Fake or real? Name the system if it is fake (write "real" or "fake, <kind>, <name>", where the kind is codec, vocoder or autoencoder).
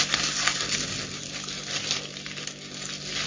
real